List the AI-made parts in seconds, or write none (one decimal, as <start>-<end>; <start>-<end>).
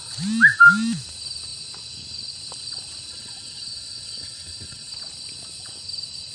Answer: 3.1-4.9